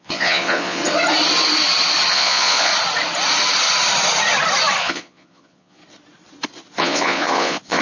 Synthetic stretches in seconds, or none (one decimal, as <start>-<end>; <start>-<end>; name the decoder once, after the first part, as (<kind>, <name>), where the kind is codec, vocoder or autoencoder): 0.0-0.8 (vocoder, Vocos); 2.1-2.7; 4.8-5.8; 6.8-7.8